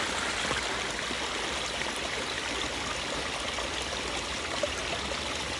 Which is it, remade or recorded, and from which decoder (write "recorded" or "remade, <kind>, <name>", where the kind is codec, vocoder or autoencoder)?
recorded